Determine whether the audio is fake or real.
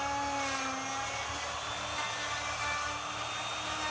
real